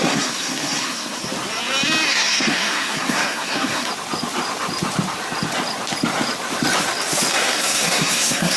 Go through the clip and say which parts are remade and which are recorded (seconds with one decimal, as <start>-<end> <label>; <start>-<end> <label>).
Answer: 0.0-1.2 remade; 1.2-2.1 recorded; 2.1-3.9 remade; 3.9-7.3 recorded; 7.3-8.6 remade